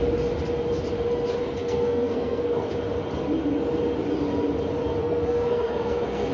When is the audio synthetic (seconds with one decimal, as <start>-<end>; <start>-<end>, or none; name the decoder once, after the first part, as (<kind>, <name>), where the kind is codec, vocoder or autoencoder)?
1.4-2.7 (codec, SNAC); 5.0-6.3